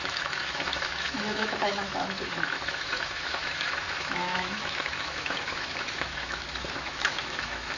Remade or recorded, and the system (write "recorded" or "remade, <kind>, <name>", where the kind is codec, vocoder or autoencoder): remade, autoencoder, DAC-VAE